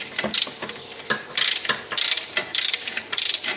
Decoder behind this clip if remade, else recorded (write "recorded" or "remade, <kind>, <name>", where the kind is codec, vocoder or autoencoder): recorded